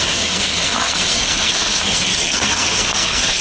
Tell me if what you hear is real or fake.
fake